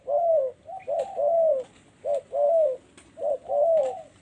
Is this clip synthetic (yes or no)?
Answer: no